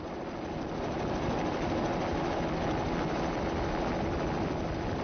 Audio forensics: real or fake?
real